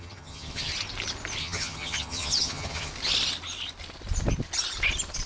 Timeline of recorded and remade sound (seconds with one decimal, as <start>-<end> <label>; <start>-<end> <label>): 0.0-0.7 remade; 0.7-1.4 recorded; 1.4-2.9 remade; 2.9-5.3 recorded